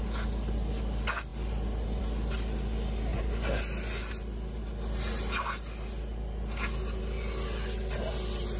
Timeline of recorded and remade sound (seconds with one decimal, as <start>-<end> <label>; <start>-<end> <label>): 0.0-8.6 recorded